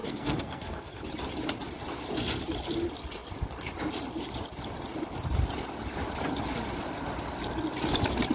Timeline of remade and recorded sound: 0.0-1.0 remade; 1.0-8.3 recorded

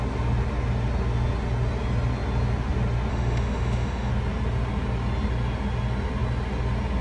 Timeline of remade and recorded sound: 0.0-3.1 recorded; 3.1-4.1 remade; 4.1-7.0 recorded

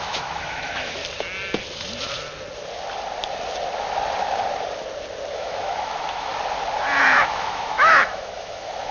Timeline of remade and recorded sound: 0.0-1.0 remade; 1.0-5.3 recorded; 5.3-6.3 remade; 6.3-7.0 recorded; 7.0-8.9 remade

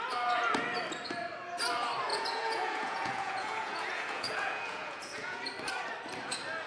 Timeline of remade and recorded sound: 0.0-2.1 recorded; 2.1-5.4 remade; 5.4-6.7 recorded

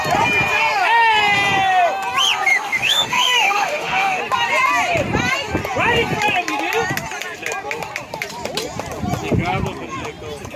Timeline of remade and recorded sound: 0.0-2.5 recorded; 2.5-4.2 remade; 4.2-10.6 recorded

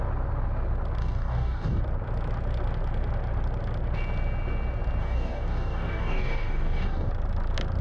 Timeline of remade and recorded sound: 0.0-1.0 recorded; 1.0-1.8 remade; 1.8-5.0 recorded; 5.0-7.1 remade; 7.1-7.8 recorded

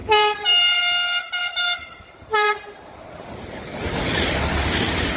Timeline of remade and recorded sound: 0.0-0.8 remade; 0.8-1.4 recorded; 1.4-4.1 remade; 4.1-5.2 recorded

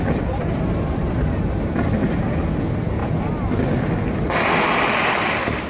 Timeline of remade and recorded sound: 0.0-5.7 recorded